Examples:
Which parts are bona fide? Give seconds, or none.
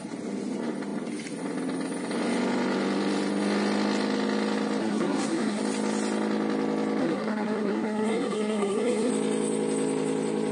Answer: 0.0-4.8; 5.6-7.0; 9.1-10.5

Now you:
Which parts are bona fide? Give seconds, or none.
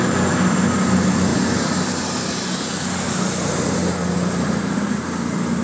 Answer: 0.0-5.6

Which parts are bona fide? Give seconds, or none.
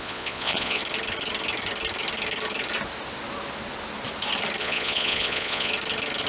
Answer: 0.8-4.6; 5.7-6.3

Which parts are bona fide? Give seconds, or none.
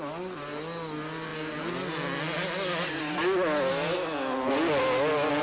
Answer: 0.0-5.4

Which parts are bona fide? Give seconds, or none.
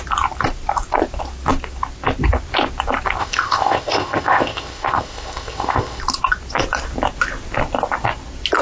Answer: 0.0-3.2; 6.0-8.6